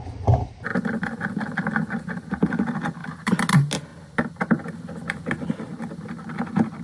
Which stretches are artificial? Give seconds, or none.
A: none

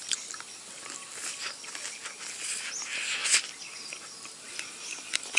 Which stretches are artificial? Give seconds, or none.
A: none

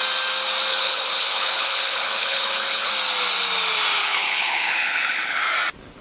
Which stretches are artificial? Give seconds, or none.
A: 0.7-2.9 (codec, HILCodec); 4.0-5.4

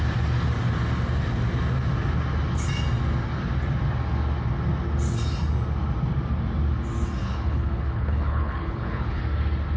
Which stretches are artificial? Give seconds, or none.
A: 7.2-9.2 (codec, HILCodec)

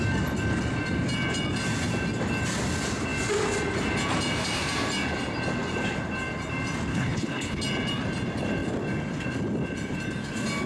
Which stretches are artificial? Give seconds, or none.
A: 6.9-7.6 (codec, HILCodec)

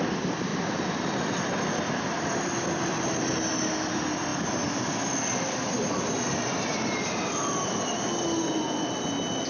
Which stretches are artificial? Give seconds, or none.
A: none

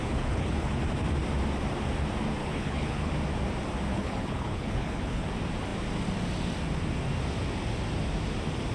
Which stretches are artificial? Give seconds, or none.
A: 0.0-0.8 (codec, HILCodec); 2.4-3.1; 3.9-5.2